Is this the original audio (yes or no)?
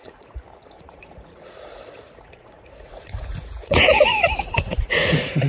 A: no